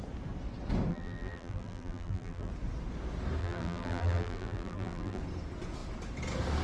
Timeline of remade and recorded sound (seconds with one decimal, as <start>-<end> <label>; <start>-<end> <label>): 0.0-0.9 recorded; 0.9-2.5 remade; 2.5-3.4 recorded; 3.4-5.2 remade; 5.2-6.6 recorded